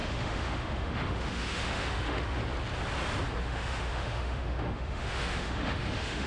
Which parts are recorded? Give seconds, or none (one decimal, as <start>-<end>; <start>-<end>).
2.4-3.4